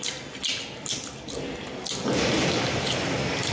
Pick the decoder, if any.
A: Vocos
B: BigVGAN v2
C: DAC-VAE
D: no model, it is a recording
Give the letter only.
D